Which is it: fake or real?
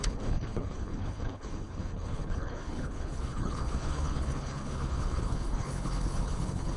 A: fake